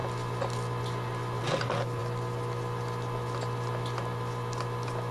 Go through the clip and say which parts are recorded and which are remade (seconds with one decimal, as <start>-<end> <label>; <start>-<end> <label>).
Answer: 0.0-5.1 recorded